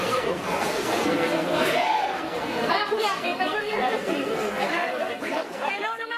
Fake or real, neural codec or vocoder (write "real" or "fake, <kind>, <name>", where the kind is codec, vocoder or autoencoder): fake, codec, SNAC